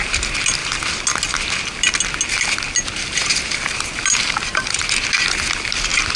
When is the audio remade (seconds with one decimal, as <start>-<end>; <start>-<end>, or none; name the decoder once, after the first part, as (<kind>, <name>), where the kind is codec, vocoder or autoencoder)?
none